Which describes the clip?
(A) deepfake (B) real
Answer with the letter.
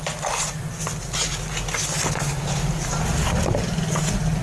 B